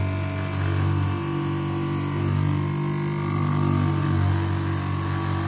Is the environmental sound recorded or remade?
recorded